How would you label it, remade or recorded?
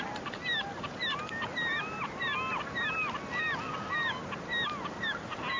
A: recorded